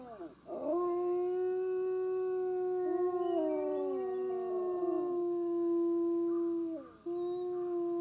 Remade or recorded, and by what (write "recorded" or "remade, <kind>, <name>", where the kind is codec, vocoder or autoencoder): recorded